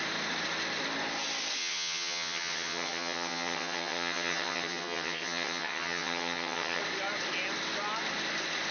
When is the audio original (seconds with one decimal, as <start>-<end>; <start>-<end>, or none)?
0.0-1.6; 6.8-8.7